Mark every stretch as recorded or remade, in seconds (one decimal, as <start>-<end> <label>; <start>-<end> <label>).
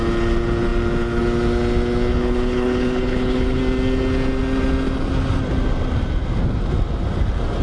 0.0-2.1 recorded; 2.1-3.6 remade; 3.6-7.6 recorded